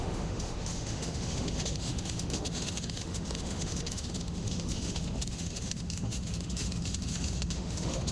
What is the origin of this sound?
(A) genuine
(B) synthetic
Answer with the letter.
B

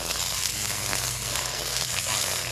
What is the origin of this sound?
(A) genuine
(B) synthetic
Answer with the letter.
B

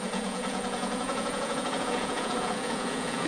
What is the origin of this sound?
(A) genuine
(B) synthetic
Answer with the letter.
B